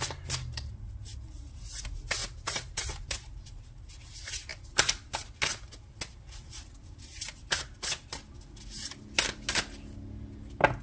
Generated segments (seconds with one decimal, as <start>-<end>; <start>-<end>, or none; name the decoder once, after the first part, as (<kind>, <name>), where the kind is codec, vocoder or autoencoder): 2.2-3.8 (vocoder, BigVGAN v2)